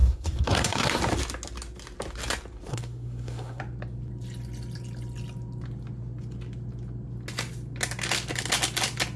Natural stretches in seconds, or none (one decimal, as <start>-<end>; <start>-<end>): 1.0-2.7; 3.6-9.2